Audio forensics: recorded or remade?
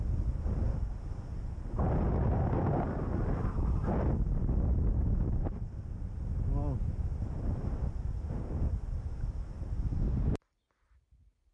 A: recorded